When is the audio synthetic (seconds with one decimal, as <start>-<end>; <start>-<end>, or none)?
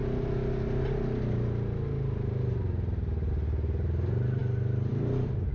none